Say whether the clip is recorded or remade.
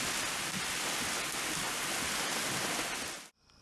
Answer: recorded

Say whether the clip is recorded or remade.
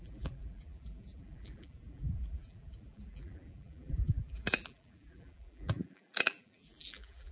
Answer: remade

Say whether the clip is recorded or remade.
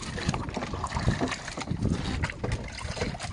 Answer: recorded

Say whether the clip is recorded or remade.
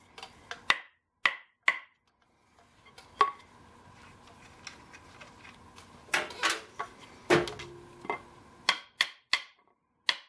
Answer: recorded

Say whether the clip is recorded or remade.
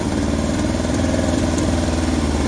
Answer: remade